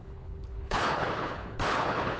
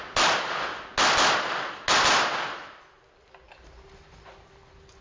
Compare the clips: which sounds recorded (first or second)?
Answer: second